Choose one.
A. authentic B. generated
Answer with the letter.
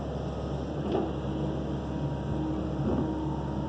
A